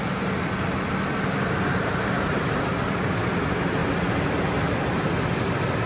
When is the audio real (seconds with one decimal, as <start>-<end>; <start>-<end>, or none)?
0.0-5.9